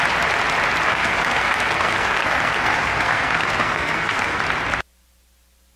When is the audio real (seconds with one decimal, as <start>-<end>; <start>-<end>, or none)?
0.0-0.9; 4.4-5.8